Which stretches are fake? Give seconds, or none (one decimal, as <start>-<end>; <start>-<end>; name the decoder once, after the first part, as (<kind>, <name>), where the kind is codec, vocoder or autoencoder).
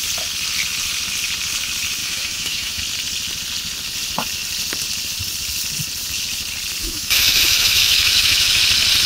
2.0-2.8 (autoencoder, DAC-VAE); 6.8-8.6